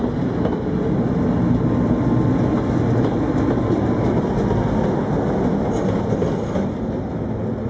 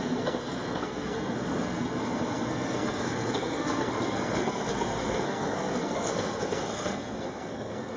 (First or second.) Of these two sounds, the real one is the first